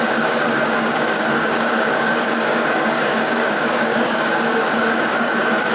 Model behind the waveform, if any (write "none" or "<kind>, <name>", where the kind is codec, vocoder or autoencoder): codec, DAC